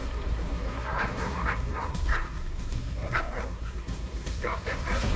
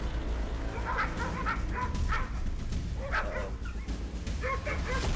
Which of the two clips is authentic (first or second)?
second